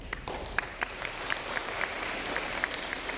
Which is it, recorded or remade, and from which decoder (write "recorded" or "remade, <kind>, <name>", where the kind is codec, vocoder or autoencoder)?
remade, vocoder, BigVGAN v2